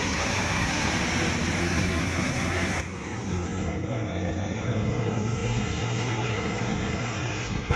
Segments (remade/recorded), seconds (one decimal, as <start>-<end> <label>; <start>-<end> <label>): 0.0-0.9 remade; 0.9-1.6 recorded; 1.6-7.8 remade